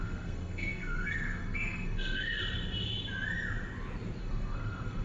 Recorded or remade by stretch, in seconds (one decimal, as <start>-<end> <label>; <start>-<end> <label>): 0.0-2.4 remade; 2.4-4.2 recorded; 4.2-5.0 remade